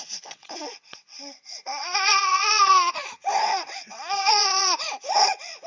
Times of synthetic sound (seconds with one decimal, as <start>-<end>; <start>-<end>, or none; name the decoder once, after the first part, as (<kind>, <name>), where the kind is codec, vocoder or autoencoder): 0.0-5.7 (vocoder, WaveNeXt)